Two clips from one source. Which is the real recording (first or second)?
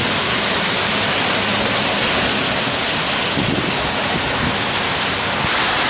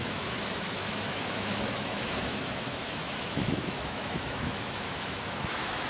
first